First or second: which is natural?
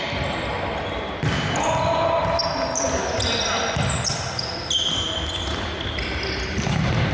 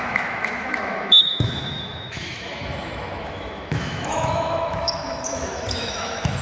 first